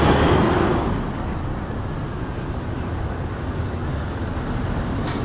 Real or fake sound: real